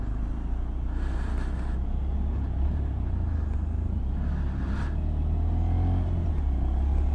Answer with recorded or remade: recorded